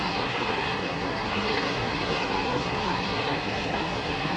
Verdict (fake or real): fake